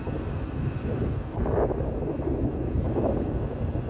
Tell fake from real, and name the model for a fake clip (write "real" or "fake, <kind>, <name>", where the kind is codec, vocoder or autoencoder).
real